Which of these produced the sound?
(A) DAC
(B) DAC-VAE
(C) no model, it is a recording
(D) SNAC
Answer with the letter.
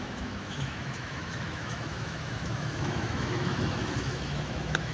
B